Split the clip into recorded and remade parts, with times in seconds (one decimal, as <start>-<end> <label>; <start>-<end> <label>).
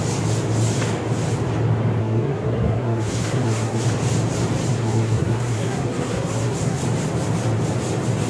0.0-2.0 recorded; 2.0-3.8 remade; 3.8-4.7 recorded; 4.7-6.8 remade; 6.8-8.3 recorded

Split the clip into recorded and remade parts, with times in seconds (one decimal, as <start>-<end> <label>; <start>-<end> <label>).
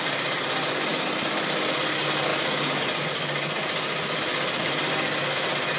0.0-5.8 recorded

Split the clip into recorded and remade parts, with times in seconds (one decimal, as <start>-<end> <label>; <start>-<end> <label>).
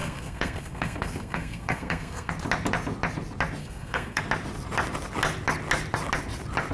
0.0-2.3 remade; 2.3-3.6 recorded; 3.6-4.2 remade; 4.2-6.7 recorded